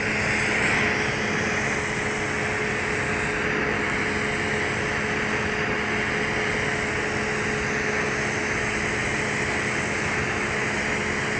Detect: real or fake real